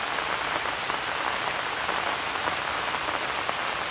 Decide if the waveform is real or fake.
real